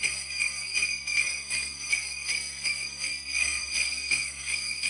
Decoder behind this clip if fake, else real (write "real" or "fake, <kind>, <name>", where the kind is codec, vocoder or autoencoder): fake, codec, SNAC